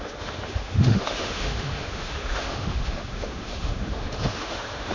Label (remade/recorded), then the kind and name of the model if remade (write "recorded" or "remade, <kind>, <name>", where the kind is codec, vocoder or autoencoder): remade, autoencoder, DAC-VAE